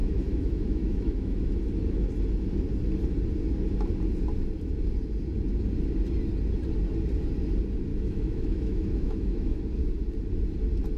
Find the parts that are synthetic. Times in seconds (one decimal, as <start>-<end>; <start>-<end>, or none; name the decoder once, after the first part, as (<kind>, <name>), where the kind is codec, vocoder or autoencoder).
0.0-1.4 (autoencoder, DAC-VAE); 7.9-9.6